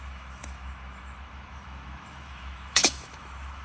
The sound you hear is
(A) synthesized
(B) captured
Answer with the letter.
A